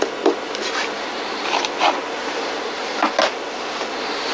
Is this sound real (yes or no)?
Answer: yes